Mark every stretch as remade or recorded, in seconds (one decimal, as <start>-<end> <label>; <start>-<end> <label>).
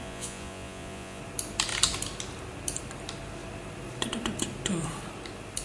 0.0-1.2 remade; 1.2-5.6 recorded